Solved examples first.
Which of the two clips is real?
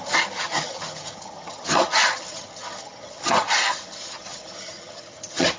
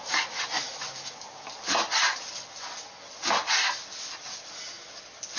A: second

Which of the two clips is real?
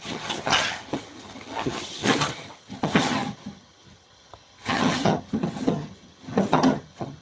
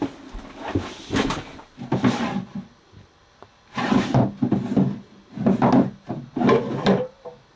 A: second